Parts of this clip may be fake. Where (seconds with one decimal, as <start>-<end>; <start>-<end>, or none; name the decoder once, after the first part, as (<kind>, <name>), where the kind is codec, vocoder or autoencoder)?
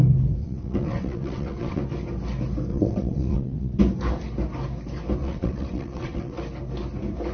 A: 0.4-1.8 (vocoder, WaveNeXt); 2.7-3.8; 5.2-6.4